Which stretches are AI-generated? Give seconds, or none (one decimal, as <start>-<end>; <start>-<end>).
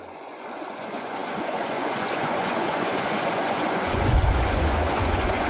0.0-5.5